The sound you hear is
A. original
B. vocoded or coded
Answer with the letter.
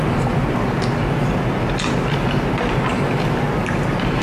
A